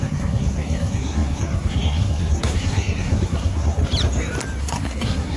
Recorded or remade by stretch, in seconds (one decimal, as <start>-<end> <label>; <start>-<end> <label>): 0.0-3.8 remade; 3.8-4.6 recorded; 4.6-5.4 remade